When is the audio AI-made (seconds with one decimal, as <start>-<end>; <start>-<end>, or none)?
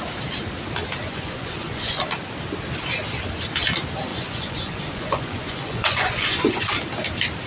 1.0-2.0; 4.1-6.7